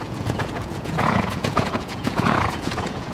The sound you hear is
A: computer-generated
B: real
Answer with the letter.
A